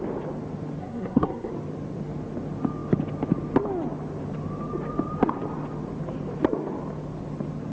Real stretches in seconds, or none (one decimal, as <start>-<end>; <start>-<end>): 0.0-0.8; 1.5-7.7